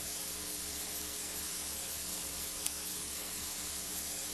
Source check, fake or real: fake